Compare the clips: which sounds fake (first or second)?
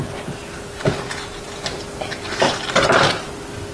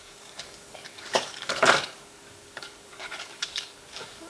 second